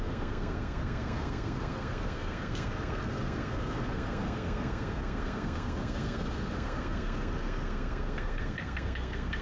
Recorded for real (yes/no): no